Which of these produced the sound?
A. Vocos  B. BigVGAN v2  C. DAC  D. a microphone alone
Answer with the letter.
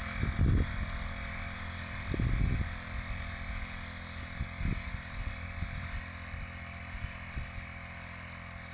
D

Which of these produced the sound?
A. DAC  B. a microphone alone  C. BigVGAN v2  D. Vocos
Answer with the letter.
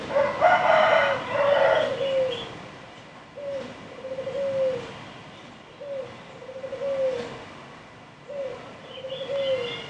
B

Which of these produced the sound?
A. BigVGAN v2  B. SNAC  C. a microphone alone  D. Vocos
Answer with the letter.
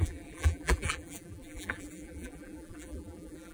A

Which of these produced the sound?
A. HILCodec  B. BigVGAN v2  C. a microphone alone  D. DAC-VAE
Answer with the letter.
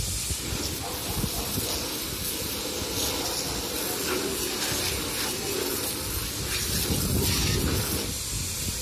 C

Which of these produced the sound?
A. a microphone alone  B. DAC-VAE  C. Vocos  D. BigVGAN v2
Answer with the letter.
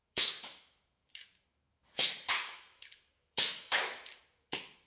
B